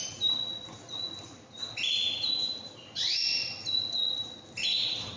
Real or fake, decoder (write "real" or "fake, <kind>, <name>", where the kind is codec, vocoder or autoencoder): real